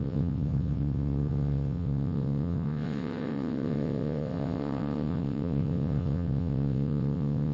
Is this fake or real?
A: fake